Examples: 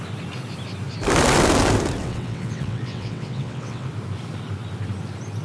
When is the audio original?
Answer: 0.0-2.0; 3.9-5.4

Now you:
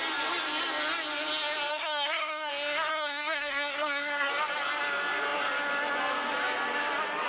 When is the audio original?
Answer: 0.0-1.7; 2.5-2.9; 4.3-7.3

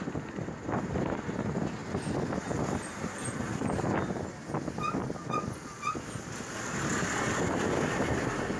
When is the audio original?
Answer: 0.0-8.6

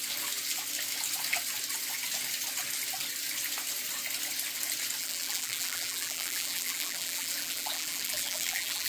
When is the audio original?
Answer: 0.0-5.0

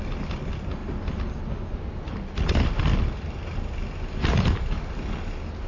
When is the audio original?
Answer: 0.0-5.7

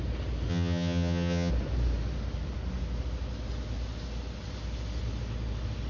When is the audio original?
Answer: 0.0-0.5; 1.5-5.9

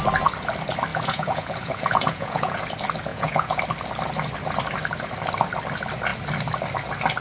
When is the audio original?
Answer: 0.0-0.9; 2.6-3.1; 3.6-7.2

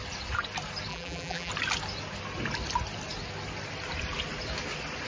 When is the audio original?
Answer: 0.0-0.9; 1.5-5.1